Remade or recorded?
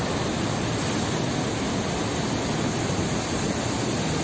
recorded